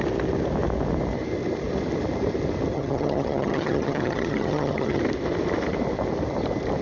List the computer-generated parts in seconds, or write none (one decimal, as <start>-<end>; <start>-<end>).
2.7-5.0